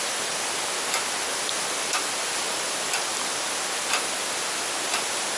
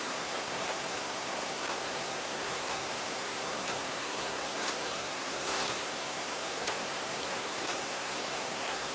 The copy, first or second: second